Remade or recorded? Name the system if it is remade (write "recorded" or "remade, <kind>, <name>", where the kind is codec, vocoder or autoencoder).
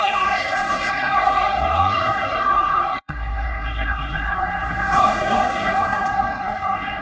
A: remade, codec, SNAC